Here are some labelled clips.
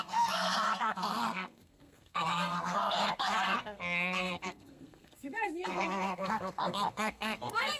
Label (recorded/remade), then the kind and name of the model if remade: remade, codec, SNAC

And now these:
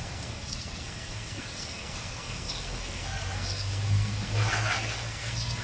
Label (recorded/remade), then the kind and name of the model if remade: remade, codec, SNAC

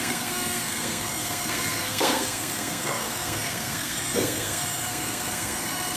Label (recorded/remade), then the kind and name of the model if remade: remade, codec, SNAC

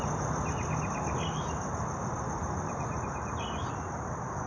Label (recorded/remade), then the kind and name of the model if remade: recorded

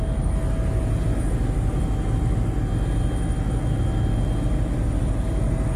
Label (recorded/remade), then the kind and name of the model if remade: recorded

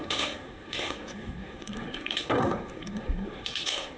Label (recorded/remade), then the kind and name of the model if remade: remade, codec, SNAC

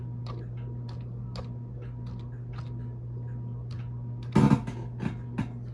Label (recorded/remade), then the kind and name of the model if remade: recorded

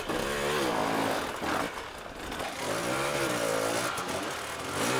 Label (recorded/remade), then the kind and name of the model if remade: recorded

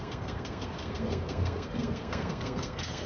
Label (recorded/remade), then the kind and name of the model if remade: remade, codec, SNAC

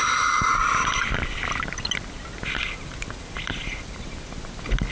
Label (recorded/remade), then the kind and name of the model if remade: recorded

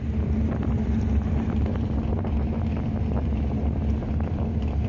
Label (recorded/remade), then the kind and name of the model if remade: recorded